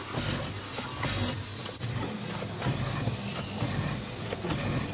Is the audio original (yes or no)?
yes